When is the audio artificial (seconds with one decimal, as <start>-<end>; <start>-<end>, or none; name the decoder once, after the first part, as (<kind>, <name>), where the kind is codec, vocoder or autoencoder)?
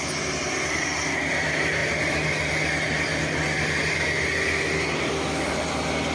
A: none